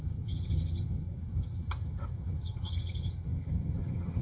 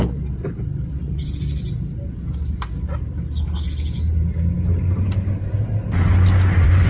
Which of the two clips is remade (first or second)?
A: first